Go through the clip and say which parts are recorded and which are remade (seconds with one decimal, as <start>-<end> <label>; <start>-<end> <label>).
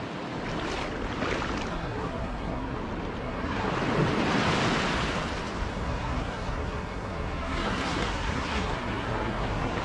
0.0-1.7 recorded; 1.7-2.8 remade; 2.8-3.2 recorded; 3.2-3.7 remade; 3.7-5.7 recorded; 5.7-9.8 remade